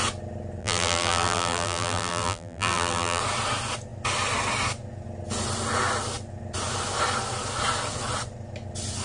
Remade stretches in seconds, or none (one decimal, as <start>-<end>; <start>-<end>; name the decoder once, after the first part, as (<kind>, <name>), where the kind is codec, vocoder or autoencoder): 0.6-3.2 (vocoder, BigVGAN v2)